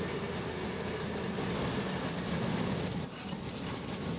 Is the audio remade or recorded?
recorded